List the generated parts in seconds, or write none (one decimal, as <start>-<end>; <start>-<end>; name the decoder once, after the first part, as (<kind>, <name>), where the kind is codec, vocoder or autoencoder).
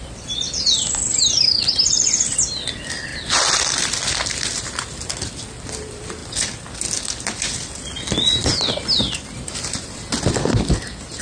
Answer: 0.0-1.1 (vocoder, BigVGAN v2); 2.4-6.2; 7.4-11.2